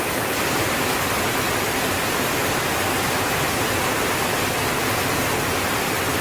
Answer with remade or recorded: recorded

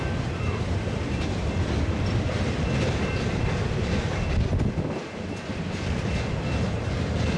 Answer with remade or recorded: recorded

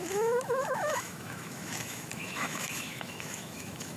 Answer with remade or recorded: remade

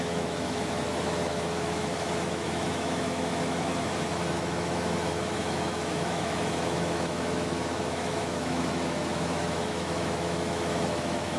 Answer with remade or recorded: remade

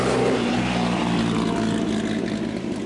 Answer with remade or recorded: recorded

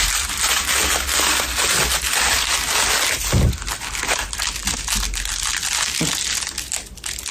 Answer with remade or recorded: recorded